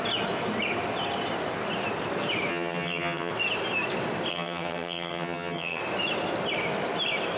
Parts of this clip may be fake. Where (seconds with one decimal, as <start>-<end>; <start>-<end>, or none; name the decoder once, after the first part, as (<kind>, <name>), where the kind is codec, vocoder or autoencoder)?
2.5-3.3 (vocoder, HiFi-GAN); 4.3-5.8